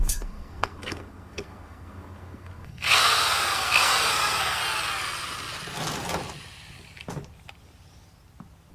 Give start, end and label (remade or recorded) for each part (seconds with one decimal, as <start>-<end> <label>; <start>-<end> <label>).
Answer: 0.0-4.6 remade; 4.6-8.7 recorded